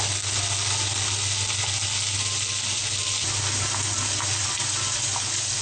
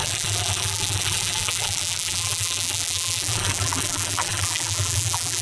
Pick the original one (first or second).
first